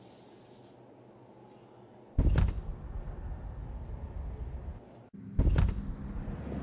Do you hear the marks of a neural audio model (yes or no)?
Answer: no